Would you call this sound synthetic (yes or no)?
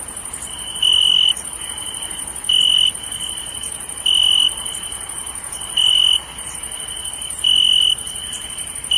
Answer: no